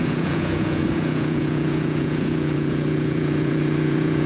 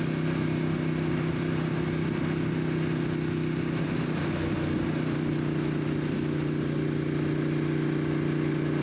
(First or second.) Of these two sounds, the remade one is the first